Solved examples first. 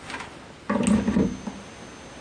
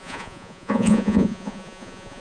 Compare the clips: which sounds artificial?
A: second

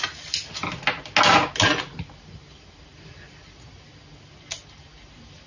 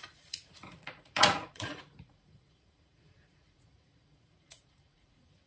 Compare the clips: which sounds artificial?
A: second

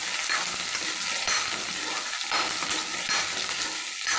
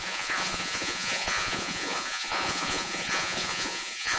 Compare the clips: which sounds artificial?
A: second